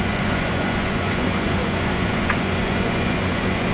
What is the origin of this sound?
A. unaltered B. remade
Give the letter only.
B